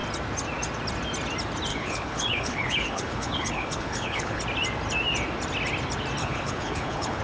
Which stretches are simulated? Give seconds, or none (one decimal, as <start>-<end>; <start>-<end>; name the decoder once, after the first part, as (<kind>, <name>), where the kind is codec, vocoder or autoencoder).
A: 1.7-4.4 (codec, HILCodec); 6.2-7.2